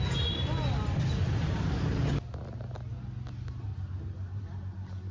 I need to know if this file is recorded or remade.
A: recorded